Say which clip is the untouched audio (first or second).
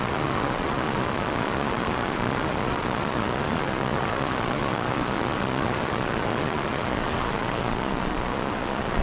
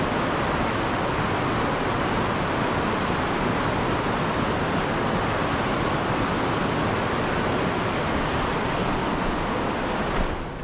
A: second